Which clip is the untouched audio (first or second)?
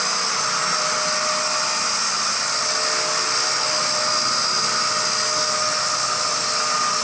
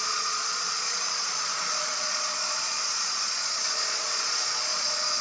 first